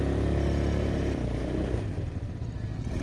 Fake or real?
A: real